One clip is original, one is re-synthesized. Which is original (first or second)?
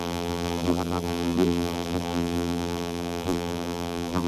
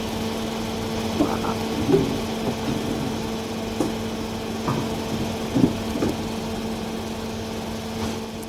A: second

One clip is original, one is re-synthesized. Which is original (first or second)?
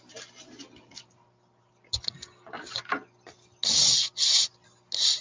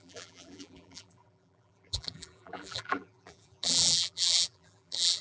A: first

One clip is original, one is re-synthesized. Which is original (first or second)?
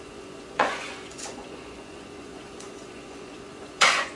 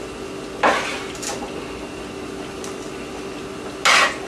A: second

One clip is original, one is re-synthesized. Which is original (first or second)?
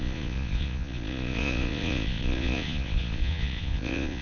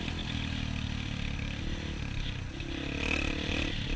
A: second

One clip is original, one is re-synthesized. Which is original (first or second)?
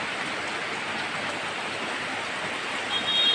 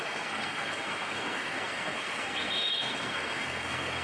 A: first